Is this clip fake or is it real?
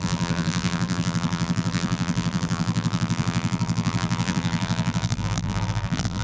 fake